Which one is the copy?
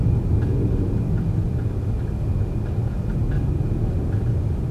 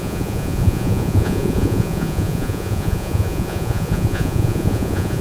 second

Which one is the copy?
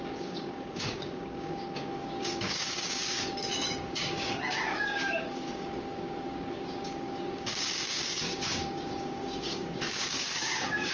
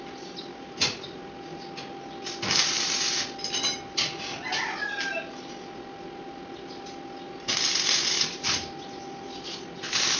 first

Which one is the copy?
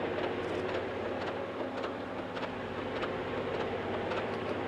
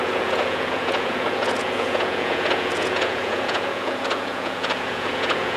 second